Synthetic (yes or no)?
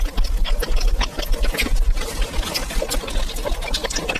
no